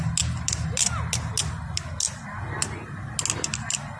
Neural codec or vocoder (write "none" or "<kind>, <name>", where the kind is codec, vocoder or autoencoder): none